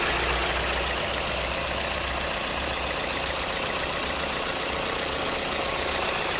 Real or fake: real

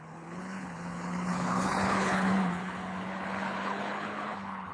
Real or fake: fake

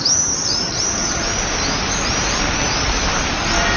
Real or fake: real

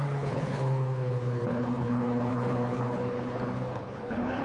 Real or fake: fake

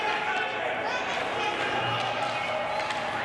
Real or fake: real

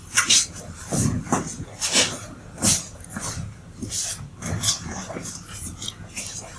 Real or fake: real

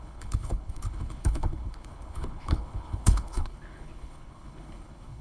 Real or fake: fake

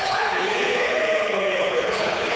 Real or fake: fake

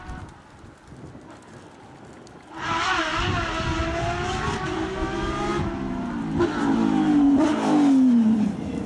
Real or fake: real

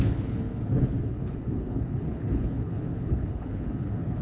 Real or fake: fake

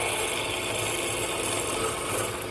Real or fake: real